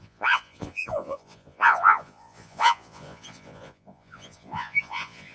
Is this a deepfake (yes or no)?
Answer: yes